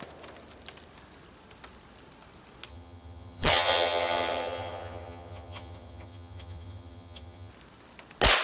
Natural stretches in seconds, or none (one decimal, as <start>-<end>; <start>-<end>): 0.0-2.7; 7.5-8.4